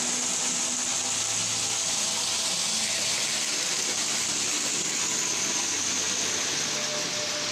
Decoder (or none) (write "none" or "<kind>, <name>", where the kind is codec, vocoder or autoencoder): none